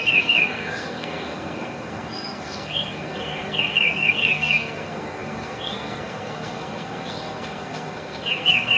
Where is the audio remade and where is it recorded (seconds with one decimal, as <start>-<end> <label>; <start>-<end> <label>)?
0.0-8.8 remade